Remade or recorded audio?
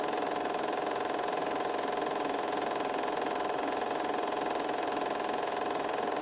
remade